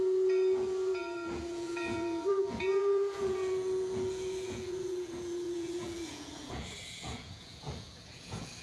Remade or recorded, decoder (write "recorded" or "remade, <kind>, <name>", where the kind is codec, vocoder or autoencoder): remade, vocoder, Vocos